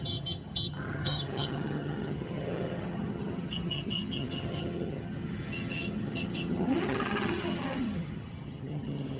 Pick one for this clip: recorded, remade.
remade